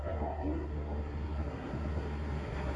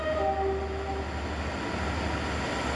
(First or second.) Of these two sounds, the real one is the second